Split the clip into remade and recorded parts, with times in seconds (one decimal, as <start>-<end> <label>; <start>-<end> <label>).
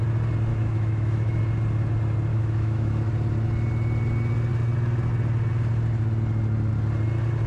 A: 0.0-0.5 recorded; 0.5-1.4 remade; 1.4-2.3 recorded; 2.3-2.9 remade; 2.9-7.5 recorded